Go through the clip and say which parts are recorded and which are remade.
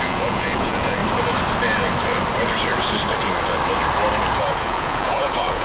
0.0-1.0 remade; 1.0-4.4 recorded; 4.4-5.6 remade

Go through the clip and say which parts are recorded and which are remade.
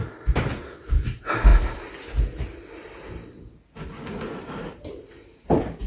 0.0-5.9 recorded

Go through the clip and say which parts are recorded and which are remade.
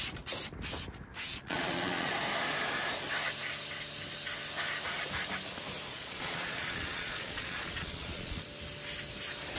0.0-1.3 recorded; 1.3-2.1 remade; 2.1-5.9 recorded; 5.9-8.4 remade; 8.4-9.6 recorded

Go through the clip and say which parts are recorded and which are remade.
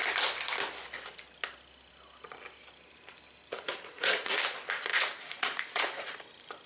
0.0-3.5 recorded; 3.5-4.4 remade; 4.4-4.9 recorded; 4.9-6.2 remade; 6.2-6.7 recorded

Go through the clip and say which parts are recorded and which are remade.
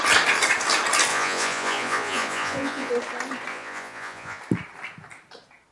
0.0-1.1 recorded; 1.1-2.9 remade; 2.9-3.5 recorded; 3.5-4.4 remade; 4.4-5.7 recorded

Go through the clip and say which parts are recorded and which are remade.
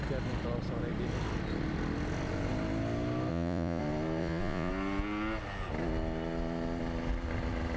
0.0-3.3 recorded; 3.3-3.8 remade; 3.8-4.2 recorded; 4.2-4.7 remade; 4.7-7.8 recorded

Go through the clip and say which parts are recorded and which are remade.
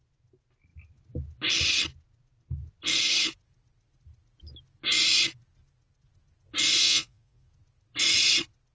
0.0-6.8 recorded; 6.8-7.5 remade; 7.5-8.7 recorded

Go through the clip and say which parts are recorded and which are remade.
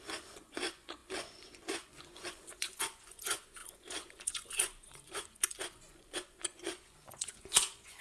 0.0-8.0 remade